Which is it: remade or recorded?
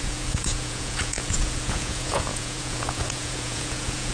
remade